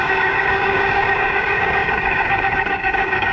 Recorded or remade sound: remade